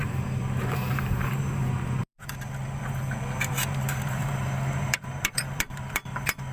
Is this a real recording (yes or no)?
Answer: no